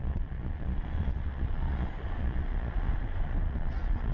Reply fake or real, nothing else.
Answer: fake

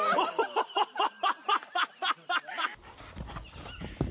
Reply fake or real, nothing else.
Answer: real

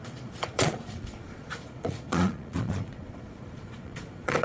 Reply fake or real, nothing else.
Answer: fake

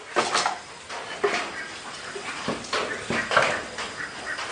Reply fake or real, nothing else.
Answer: real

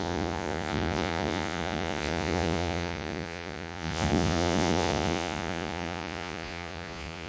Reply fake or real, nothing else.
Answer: fake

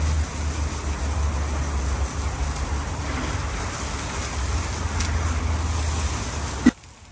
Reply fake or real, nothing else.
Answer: real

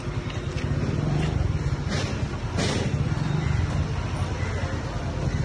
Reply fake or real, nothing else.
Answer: real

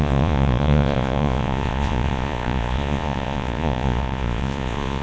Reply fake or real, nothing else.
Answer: fake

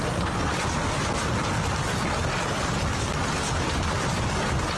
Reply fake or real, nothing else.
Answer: real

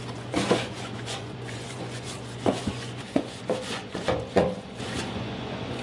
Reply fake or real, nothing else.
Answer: fake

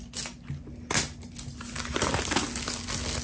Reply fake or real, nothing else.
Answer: real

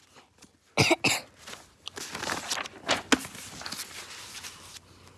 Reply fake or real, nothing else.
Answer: real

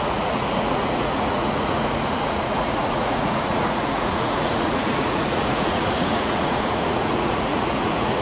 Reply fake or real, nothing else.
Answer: fake